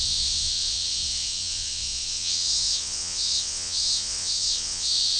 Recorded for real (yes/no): no